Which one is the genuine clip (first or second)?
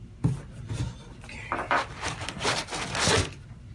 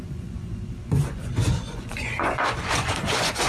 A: first